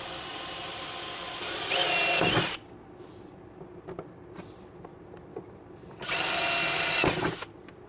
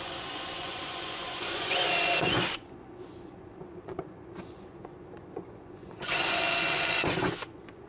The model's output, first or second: second